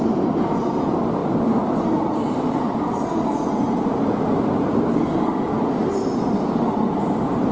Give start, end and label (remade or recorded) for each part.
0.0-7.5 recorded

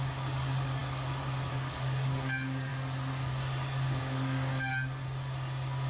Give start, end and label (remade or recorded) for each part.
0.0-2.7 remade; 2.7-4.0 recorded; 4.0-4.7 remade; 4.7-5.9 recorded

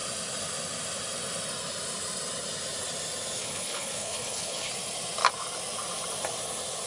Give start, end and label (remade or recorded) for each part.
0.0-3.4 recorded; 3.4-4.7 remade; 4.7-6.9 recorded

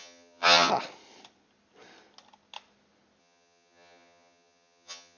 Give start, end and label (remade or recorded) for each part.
0.0-0.7 remade; 0.7-3.2 recorded; 3.2-5.2 remade

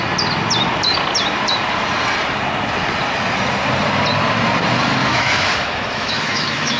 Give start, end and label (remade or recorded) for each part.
0.0-5.0 recorded; 5.0-6.8 remade

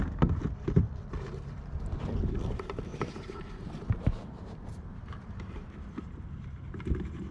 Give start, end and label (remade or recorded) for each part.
0.0-2.9 recorded; 2.9-6.1 remade; 6.1-7.3 recorded